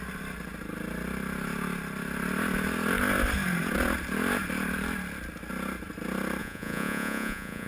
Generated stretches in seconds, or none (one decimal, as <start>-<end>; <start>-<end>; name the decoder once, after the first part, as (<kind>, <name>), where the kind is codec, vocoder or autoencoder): 6.4-7.7 (vocoder, Vocos)